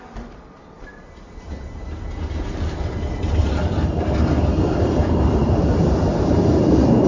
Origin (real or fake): fake